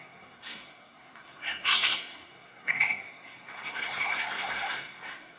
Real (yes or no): no